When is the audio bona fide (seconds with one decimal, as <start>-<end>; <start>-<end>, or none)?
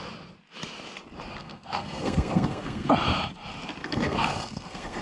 0.0-1.4; 2.9-3.8